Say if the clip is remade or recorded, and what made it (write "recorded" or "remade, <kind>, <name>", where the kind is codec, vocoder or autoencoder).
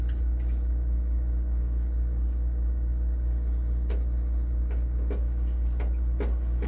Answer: recorded